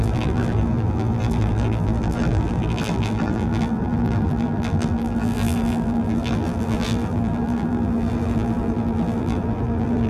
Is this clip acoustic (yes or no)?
no